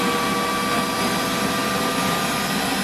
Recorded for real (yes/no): yes